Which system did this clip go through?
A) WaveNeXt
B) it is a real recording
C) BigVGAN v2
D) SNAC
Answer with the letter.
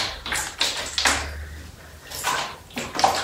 B